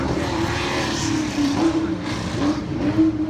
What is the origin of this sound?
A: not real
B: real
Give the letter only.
A